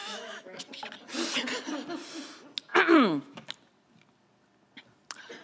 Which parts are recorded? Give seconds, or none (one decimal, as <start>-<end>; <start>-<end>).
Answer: 0.6-2.7; 3.5-5.4